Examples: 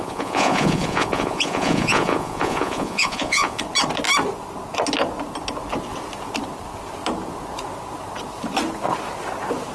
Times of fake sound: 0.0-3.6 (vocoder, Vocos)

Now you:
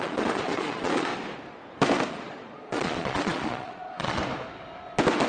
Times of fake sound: 0.0-1.1 (vocoder, Vocos); 2.1-4.2

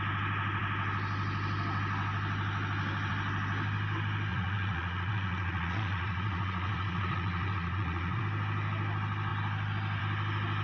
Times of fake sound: 4.3-8.2 (vocoder, Vocos)

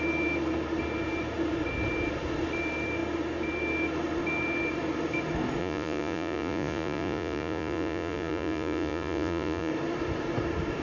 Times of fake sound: 5.6-9.7 (vocoder, Vocos)

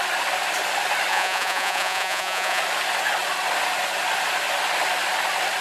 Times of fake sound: 1.1-2.6 (vocoder, Vocos)